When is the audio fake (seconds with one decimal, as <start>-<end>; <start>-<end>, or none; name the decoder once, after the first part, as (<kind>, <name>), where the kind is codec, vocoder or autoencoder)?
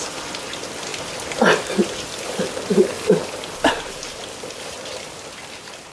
none